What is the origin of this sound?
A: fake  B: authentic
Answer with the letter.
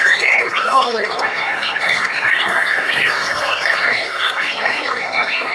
A